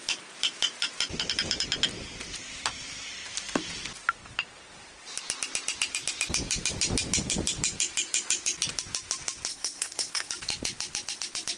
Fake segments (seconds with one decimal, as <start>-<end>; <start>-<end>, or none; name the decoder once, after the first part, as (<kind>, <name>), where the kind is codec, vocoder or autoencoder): 9.5-10.3 (codec, SNAC)